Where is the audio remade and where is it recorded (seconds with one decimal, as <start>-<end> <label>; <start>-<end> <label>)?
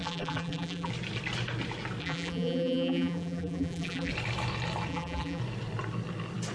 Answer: 0.0-0.9 remade; 0.9-2.0 recorded; 2.0-4.1 remade; 4.1-4.9 recorded; 4.9-5.4 remade; 5.4-6.5 recorded